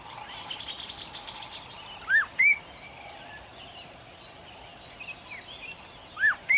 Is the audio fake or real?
real